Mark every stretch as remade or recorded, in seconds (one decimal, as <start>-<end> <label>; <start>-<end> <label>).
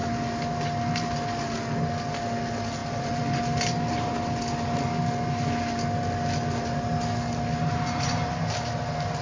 0.0-2.8 recorded; 2.8-3.4 remade; 3.4-9.2 recorded